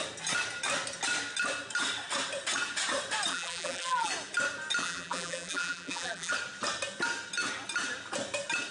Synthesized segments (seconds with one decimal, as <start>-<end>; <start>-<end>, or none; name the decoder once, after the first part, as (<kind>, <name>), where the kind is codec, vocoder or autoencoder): 3.3-4.1 (vocoder, BigVGAN v2); 4.8-6.3